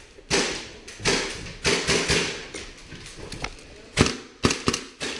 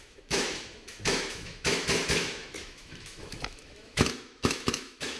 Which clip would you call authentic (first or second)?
first